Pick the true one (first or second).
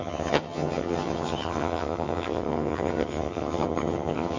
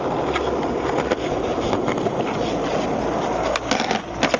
second